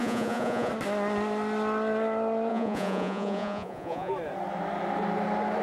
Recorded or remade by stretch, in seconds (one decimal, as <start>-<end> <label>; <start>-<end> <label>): 0.0-0.7 remade; 0.7-2.5 recorded; 2.5-4.1 remade; 4.1-5.6 recorded